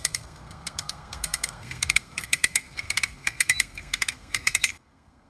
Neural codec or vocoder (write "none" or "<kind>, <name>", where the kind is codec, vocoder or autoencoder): codec, SNAC